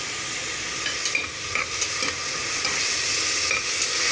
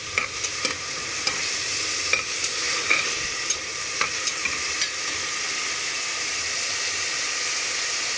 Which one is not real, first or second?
second